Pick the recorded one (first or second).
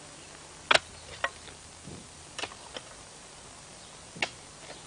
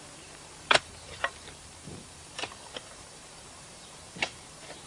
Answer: first